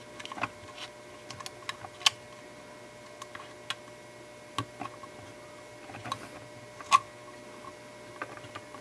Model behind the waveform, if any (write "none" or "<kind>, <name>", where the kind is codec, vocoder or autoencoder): none